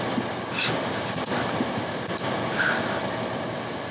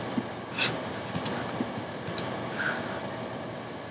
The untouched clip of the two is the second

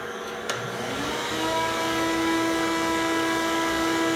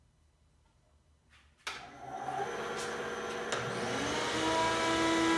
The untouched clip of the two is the second